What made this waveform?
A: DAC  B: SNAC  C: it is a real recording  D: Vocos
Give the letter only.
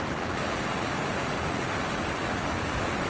C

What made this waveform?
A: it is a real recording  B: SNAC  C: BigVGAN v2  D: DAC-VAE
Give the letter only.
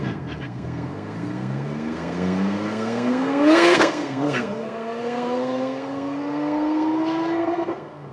B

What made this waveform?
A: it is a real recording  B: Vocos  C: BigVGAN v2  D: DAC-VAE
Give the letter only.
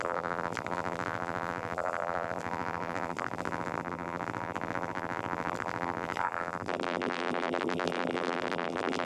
C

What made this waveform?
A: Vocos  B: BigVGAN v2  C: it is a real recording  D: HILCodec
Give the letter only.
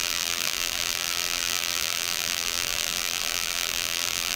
B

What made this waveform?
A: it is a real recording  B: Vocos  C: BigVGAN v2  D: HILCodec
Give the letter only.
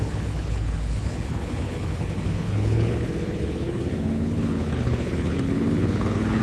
D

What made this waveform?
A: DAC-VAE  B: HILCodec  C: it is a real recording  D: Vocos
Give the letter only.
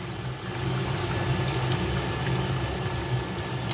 C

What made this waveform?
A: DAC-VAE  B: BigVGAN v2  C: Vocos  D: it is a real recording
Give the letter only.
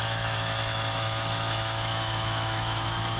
A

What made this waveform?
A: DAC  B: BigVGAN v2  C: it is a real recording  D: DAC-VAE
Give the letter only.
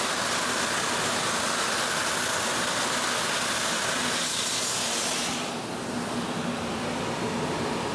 C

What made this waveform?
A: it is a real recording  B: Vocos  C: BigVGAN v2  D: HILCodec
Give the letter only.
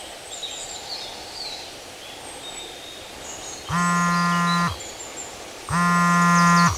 A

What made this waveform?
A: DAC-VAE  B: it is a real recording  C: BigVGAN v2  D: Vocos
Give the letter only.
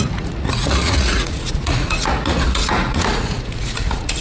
D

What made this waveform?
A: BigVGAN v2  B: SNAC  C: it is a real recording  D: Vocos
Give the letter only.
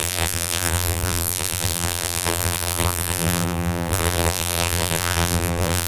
A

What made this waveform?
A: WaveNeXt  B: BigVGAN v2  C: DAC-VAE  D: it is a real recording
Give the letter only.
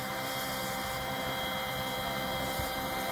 B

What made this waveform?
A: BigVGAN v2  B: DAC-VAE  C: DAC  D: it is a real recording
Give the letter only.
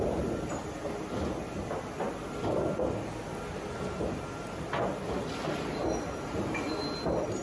D